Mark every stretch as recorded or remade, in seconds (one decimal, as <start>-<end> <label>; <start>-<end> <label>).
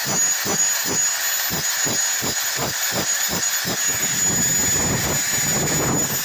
0.0-2.6 recorded; 2.6-3.4 remade; 3.4-6.2 recorded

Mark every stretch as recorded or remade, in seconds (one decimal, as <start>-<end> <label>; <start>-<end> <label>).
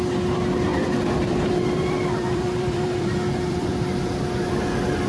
0.0-0.7 recorded; 0.7-3.7 remade; 3.7-5.1 recorded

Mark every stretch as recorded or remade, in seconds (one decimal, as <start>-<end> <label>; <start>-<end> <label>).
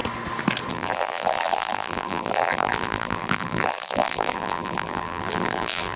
0.0-0.7 recorded; 0.7-6.0 remade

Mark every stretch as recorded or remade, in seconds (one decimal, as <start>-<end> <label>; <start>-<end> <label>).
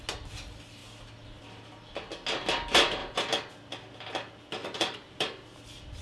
0.0-4.6 recorded; 4.6-5.6 remade; 5.6-6.0 recorded